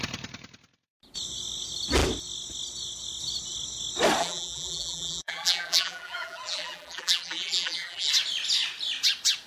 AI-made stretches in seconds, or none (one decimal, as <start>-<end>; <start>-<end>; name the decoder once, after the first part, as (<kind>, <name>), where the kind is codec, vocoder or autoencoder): 4.2-8.1 (vocoder, BigVGAN v2)